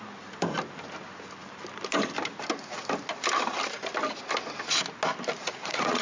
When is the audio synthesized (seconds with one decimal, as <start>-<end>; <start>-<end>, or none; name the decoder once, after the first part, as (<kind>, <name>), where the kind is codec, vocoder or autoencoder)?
5.4-6.0 (vocoder, Vocos)